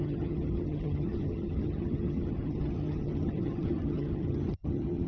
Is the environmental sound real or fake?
fake